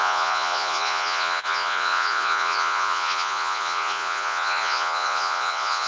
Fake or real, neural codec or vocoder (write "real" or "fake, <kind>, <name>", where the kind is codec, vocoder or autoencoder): fake, vocoder, Vocos